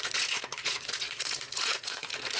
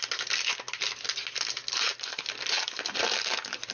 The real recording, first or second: second